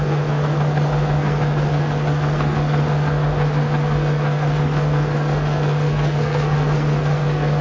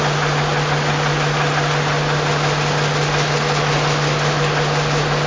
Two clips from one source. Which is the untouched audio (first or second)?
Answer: second